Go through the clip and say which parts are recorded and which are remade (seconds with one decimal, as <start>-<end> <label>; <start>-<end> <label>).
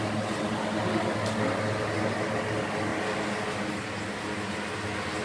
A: 0.0-5.2 recorded